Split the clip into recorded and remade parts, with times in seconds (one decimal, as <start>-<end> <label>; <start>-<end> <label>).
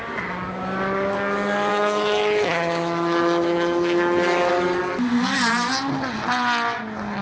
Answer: 0.0-1.7 recorded; 1.7-4.5 remade; 4.5-7.2 recorded